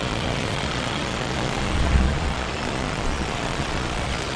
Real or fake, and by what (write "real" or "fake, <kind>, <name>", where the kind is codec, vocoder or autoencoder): fake, vocoder, Vocos